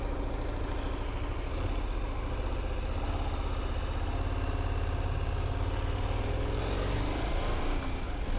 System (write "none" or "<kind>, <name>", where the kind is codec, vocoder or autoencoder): none